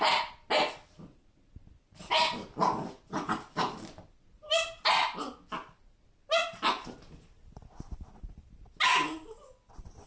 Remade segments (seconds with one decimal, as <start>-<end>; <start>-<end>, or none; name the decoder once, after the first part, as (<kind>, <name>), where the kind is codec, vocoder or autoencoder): none